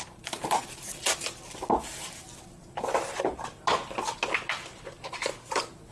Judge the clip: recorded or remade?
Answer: recorded